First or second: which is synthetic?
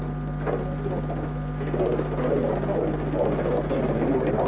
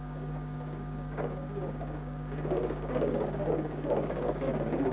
second